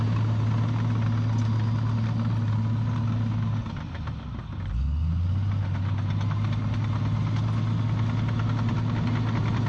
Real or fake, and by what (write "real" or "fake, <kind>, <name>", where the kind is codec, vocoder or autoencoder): real